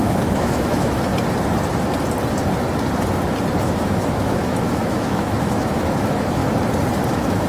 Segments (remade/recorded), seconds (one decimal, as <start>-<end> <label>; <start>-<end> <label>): 0.0-1.1 remade; 1.1-3.6 recorded; 3.6-6.4 remade; 6.4-7.1 recorded; 7.1-7.5 remade